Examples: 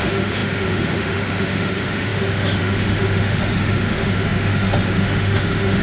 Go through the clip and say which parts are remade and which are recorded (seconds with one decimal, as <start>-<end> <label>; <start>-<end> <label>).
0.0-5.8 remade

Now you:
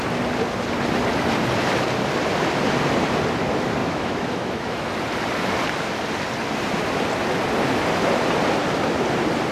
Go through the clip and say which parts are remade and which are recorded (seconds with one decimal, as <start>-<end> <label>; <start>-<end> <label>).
0.0-3.8 recorded; 3.8-4.9 remade; 4.9-9.5 recorded

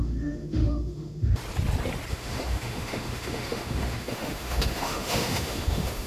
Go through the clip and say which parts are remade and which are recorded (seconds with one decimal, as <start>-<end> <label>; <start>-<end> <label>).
0.0-1.4 remade; 1.4-2.1 recorded; 2.1-6.1 remade

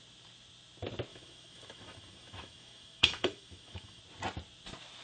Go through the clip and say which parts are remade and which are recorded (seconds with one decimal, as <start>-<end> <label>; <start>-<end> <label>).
0.0-1.1 recorded; 1.1-4.0 remade; 4.0-5.0 recorded